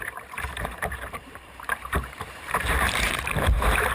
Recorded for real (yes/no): no